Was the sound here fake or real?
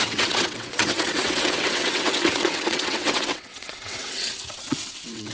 fake